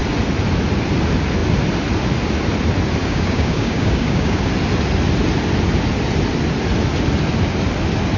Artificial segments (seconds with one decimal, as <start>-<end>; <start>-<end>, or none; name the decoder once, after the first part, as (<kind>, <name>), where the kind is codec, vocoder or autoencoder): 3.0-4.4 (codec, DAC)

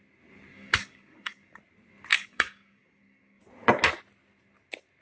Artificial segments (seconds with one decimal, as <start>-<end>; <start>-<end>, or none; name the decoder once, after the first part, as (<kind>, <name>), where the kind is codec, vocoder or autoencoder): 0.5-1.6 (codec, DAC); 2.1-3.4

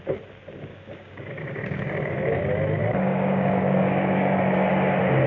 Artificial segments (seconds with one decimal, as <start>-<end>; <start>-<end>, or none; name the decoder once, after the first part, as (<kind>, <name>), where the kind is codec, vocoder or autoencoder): 0.7-2.4 (codec, DAC); 2.8-4.7